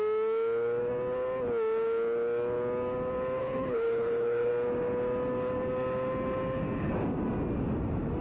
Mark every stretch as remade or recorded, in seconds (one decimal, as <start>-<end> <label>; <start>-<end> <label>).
0.0-3.4 recorded; 3.4-4.5 remade; 4.5-8.2 recorded